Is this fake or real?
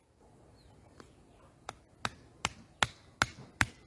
real